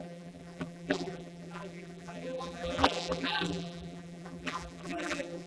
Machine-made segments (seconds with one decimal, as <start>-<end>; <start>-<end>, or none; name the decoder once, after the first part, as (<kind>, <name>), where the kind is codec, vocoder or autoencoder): 0.0-5.5 (vocoder, BigVGAN v2)